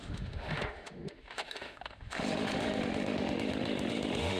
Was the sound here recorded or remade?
remade